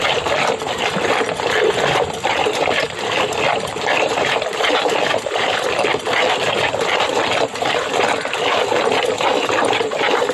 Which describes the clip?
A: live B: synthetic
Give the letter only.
B